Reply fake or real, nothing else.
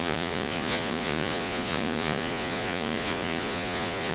fake